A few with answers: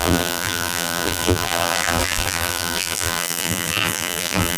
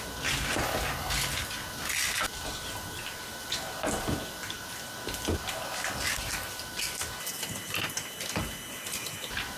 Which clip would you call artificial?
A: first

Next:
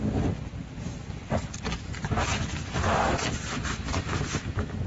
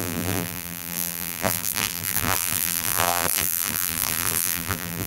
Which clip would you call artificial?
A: second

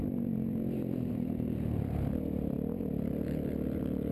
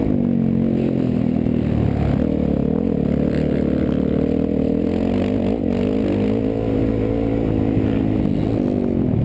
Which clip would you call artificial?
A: first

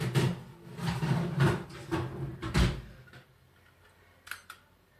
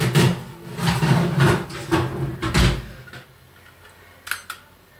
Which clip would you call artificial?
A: first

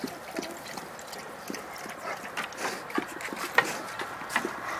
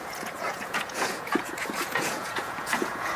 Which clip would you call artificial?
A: second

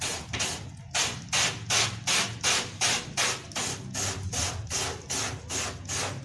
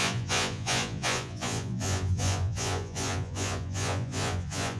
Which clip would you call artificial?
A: second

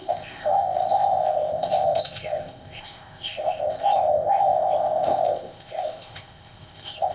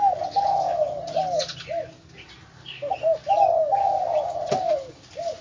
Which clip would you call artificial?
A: first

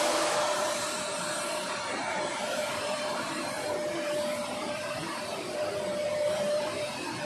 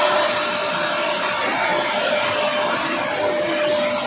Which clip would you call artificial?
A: first